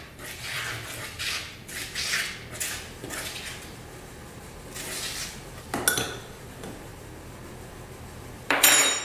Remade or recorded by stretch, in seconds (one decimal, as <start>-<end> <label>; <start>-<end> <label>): 0.0-1.7 remade; 1.7-6.2 recorded; 6.2-6.9 remade; 6.9-7.9 recorded; 7.9-9.0 remade